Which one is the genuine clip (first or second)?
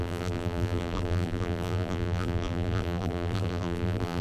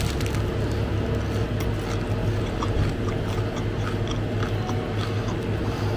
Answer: second